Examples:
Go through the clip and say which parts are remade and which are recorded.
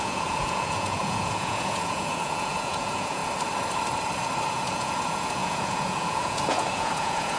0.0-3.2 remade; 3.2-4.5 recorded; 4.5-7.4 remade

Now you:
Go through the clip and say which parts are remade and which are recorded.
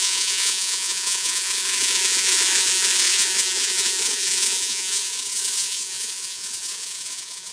0.0-7.5 remade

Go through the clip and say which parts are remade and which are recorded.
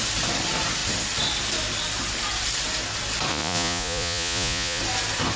0.0-3.3 recorded; 3.3-4.8 remade; 4.8-5.4 recorded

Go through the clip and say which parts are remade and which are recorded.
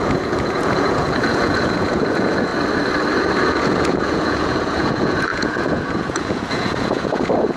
0.0-2.5 remade; 2.5-3.4 recorded; 3.4-7.6 remade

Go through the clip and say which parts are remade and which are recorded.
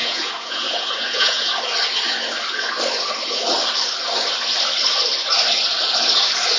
0.0-1.5 remade; 1.5-6.6 recorded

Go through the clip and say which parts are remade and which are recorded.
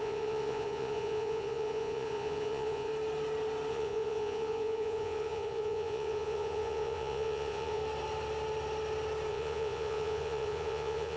0.0-2.9 remade; 2.9-3.7 recorded; 3.7-7.8 remade; 7.8-9.3 recorded; 9.3-11.2 remade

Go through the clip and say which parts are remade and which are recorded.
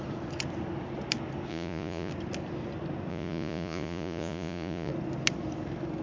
0.0-1.5 recorded; 1.5-2.1 remade; 2.1-3.1 recorded; 3.1-4.9 remade; 4.9-6.0 recorded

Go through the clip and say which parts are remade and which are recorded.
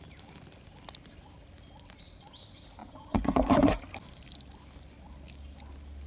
0.0-2.8 recorded; 2.8-3.8 remade; 3.8-6.1 recorded